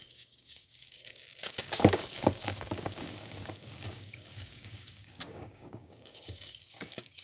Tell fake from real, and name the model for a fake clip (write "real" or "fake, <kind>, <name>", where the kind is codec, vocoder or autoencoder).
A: fake, codec, DAC